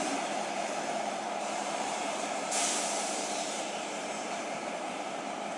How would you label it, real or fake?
fake